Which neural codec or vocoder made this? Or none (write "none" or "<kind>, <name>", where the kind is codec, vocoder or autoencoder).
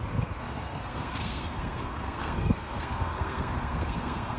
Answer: codec, SNAC